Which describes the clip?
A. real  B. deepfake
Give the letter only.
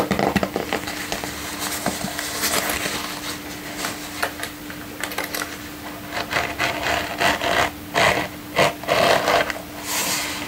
A